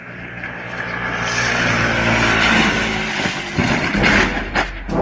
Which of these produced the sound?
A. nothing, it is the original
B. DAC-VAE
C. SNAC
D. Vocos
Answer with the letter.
A